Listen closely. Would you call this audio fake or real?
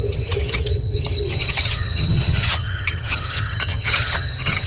fake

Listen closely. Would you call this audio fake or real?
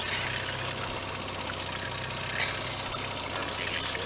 real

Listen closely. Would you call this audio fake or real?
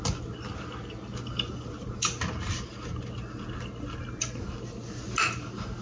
real